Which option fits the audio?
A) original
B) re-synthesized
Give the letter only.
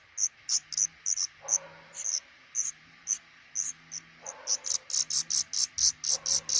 A